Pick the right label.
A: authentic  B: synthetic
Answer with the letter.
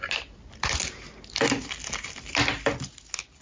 A